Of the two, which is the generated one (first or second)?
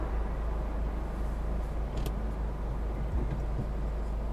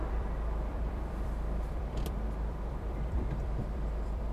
second